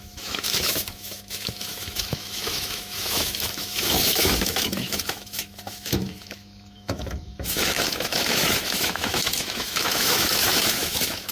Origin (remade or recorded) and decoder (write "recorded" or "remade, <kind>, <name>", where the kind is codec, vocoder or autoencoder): remade, autoencoder, DAC-VAE